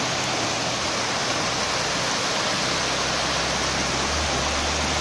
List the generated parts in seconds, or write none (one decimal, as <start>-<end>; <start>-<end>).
none